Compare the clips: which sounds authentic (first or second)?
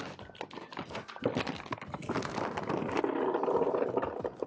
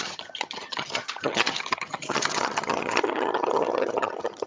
first